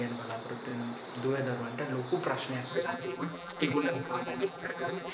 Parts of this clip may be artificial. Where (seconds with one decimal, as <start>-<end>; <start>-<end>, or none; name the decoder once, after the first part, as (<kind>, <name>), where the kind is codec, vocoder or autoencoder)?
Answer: 2.7-5.1 (vocoder, BigVGAN v2)